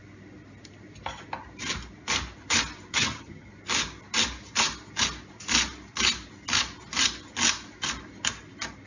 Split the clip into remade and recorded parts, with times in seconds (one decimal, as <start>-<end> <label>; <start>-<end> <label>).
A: 0.0-2.9 recorded; 2.9-3.5 remade; 3.5-8.9 recorded